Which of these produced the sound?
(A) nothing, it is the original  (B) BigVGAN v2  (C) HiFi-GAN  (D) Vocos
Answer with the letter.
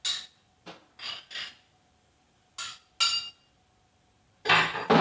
A